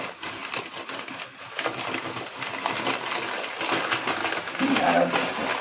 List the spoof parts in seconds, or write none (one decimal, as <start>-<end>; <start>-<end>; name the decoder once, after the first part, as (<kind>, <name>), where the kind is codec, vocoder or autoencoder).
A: none